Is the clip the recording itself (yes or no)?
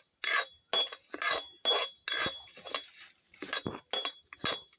yes